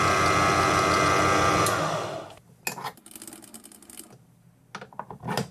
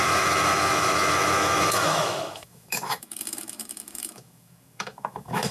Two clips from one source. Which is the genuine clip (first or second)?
first